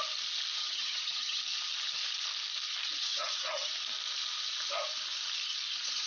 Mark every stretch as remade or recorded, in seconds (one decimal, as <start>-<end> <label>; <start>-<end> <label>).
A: 0.0-0.6 recorded; 0.6-1.4 remade; 1.4-3.1 recorded; 3.1-3.7 remade; 3.7-6.1 recorded